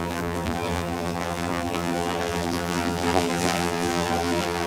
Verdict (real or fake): fake